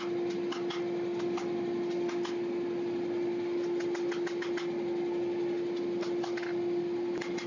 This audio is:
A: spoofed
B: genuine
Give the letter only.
B